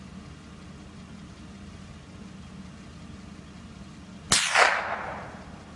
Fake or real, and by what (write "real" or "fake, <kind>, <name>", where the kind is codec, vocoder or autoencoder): real